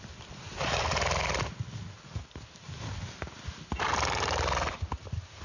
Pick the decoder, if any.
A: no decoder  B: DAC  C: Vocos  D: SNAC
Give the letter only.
A